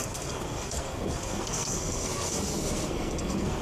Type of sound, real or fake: fake